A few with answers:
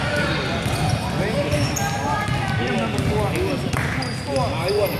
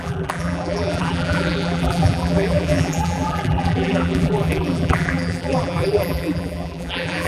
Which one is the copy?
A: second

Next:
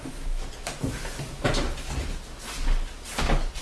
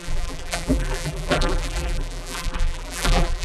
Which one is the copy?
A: second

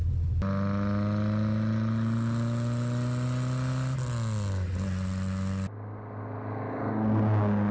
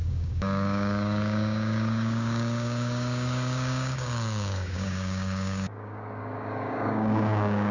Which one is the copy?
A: second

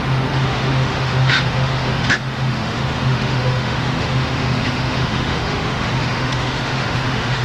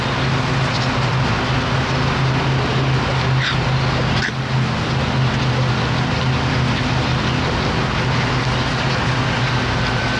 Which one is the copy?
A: first